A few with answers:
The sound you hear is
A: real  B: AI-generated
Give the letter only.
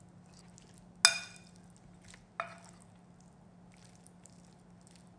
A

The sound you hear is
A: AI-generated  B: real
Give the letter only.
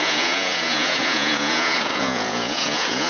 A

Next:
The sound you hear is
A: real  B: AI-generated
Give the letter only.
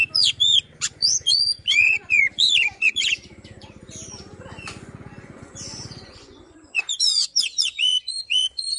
B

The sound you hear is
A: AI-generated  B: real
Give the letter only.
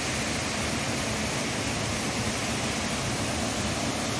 B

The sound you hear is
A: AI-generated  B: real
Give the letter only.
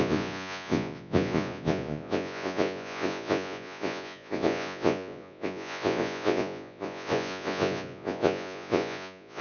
A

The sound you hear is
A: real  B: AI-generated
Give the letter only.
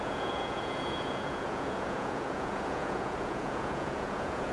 B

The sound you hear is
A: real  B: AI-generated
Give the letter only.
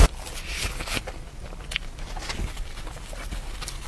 A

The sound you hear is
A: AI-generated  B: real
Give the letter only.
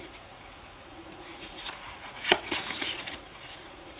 A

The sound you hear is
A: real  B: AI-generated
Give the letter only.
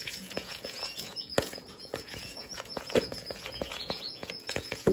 B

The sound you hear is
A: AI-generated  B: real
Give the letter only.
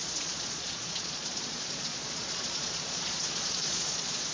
A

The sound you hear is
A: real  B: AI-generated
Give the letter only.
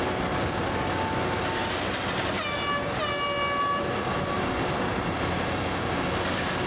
A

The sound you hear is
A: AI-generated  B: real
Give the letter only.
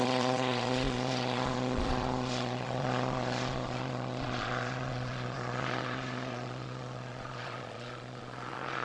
A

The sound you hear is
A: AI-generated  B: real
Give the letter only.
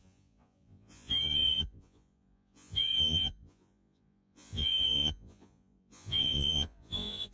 A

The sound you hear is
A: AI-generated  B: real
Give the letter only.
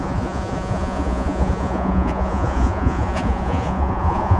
A